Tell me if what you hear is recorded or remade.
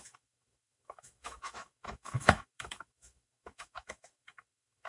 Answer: remade